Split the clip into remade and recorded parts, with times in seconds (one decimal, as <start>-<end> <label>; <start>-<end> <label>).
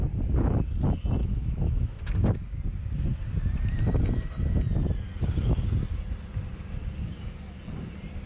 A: 0.0-1.2 recorded; 1.2-2.0 remade; 2.0-8.3 recorded